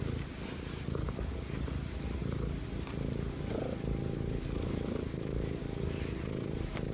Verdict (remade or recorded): recorded